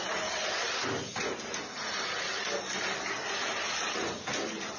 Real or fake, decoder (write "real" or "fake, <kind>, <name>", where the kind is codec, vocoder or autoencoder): real